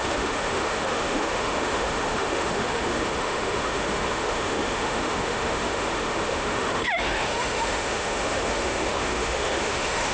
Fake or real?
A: fake